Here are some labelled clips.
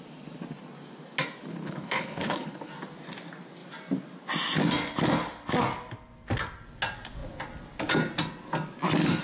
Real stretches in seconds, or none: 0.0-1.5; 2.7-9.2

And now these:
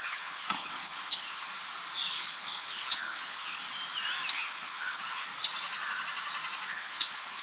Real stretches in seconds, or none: 1.5-2.1; 3.6-4.3; 5.3-6.7

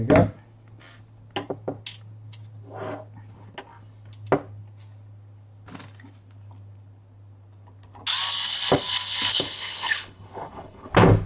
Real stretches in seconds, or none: 0.0-9.3; 10.9-11.3